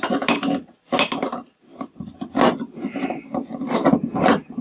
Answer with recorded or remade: recorded